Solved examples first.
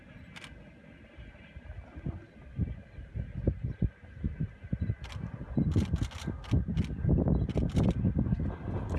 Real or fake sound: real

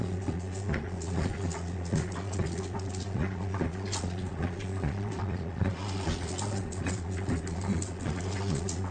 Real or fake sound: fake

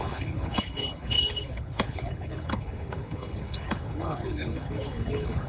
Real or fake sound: fake